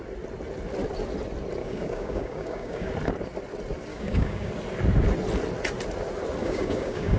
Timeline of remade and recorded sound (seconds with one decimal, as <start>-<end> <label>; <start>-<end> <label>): 0.0-1.6 recorded; 1.6-2.9 remade; 2.9-3.9 recorded; 3.9-4.5 remade; 4.5-6.4 recorded; 6.4-7.2 remade